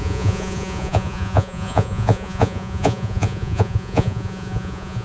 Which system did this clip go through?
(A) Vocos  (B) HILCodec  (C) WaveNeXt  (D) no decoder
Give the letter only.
A